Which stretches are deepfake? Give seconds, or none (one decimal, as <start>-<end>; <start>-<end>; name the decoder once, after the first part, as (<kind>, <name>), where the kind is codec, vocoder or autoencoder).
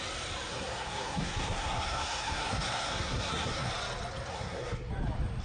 0.5-3.7 (codec, SNAC); 4.3-4.9